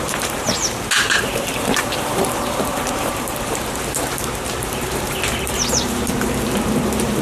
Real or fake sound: fake